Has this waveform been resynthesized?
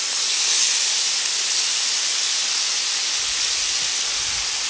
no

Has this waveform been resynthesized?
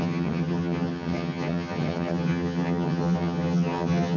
yes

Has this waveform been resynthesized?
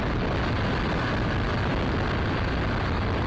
no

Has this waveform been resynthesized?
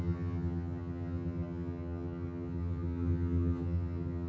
yes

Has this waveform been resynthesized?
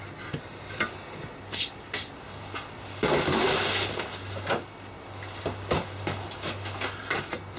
no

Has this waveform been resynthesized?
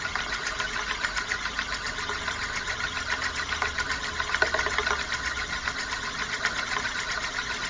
no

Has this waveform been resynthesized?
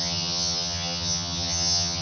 yes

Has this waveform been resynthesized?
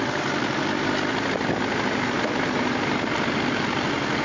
no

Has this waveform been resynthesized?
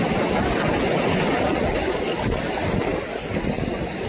no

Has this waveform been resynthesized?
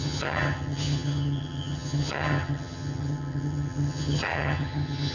yes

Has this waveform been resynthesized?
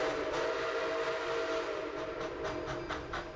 no